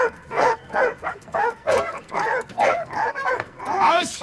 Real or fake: fake